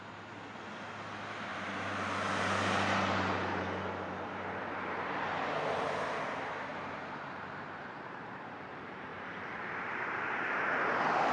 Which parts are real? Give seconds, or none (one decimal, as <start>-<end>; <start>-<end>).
0.0-1.5; 4.6-6.7; 8.7-9.1; 10.6-11.3